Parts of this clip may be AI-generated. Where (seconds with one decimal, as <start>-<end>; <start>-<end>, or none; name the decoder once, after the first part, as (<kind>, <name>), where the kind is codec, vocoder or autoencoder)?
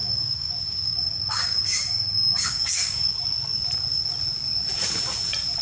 0.0-3.1 (codec, DAC)